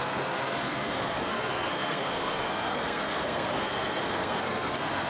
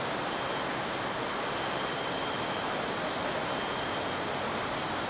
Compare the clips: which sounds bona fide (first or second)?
second